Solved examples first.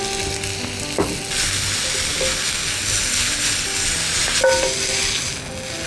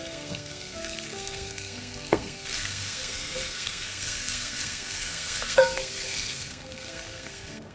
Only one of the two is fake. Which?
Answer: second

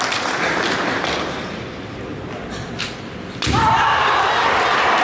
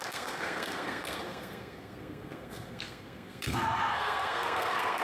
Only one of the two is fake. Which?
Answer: second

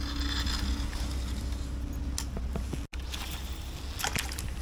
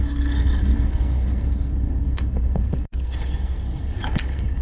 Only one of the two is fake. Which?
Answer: second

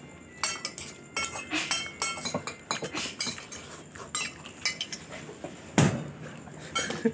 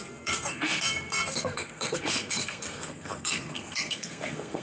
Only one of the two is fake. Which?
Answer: second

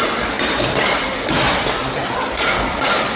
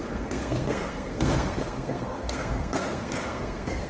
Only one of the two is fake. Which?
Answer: second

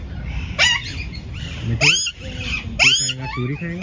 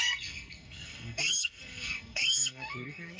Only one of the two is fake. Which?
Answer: second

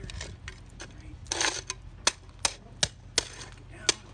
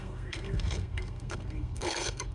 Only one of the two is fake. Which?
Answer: second